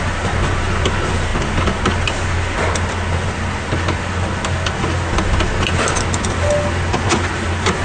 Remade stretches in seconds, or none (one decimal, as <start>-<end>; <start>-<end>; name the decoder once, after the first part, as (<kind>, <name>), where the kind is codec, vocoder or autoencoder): none